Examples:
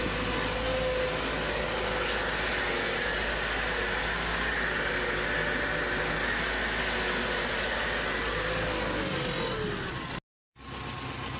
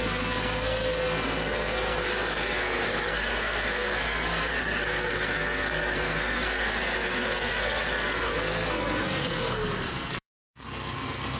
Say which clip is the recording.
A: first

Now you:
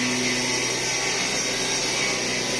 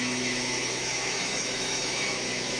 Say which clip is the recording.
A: first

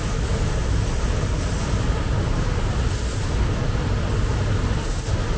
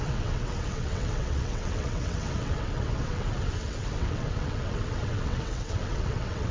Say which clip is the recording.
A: first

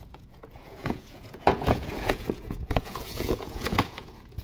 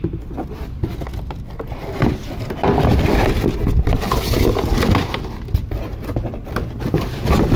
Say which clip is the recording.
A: second